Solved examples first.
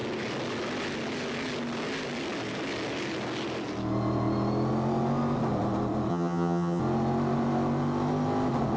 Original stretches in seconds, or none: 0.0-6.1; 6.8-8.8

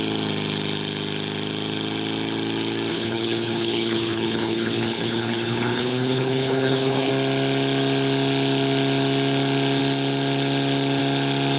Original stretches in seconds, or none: 0.0-2.9; 7.1-11.6

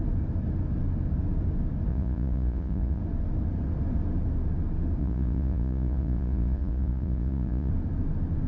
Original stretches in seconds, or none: 0.0-1.9; 3.0-5.0; 7.7-8.5

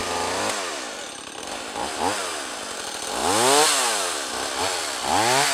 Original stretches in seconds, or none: 0.0-5.5

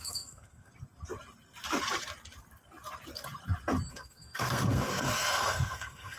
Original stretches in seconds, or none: 0.7-3.9